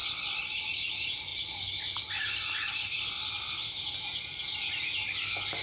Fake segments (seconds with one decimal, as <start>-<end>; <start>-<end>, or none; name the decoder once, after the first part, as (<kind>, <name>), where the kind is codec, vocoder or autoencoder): none